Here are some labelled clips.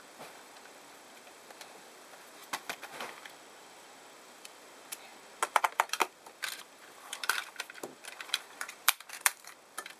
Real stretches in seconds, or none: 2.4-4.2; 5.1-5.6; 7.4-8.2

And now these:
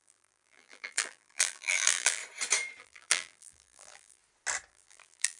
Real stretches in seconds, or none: 2.2-2.8; 4.2-4.7

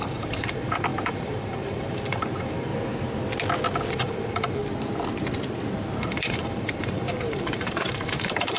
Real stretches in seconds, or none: 2.7-3.9; 4.6-6.0